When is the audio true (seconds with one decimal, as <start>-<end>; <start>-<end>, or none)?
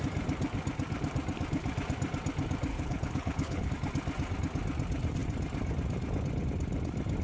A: 0.0-2.7; 3.7-7.2